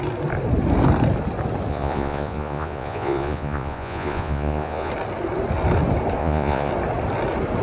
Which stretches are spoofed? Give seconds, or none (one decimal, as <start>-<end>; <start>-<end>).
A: 1.7-4.9; 6.2-6.7